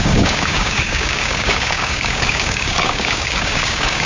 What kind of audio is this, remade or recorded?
remade